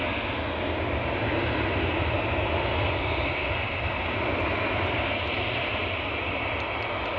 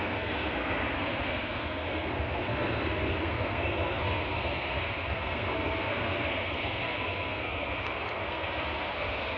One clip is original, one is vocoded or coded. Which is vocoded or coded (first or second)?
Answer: second